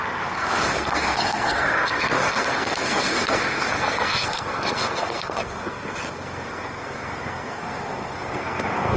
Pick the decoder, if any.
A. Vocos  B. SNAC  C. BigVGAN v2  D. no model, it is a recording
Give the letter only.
B